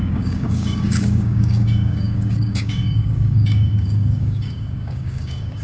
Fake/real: fake